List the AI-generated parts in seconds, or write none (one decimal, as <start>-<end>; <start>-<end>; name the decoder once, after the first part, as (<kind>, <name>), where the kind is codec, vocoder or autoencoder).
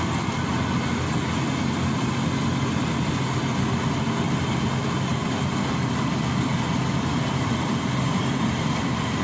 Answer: 5.2-5.9 (vocoder, BigVGAN v2); 6.5-9.2